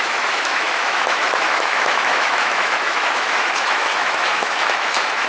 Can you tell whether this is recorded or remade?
remade